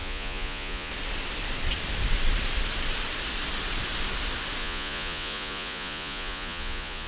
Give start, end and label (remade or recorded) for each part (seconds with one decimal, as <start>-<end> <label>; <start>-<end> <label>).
0.0-0.9 remade; 0.9-4.6 recorded; 4.6-7.1 remade